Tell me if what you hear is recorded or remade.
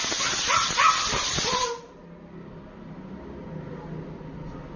recorded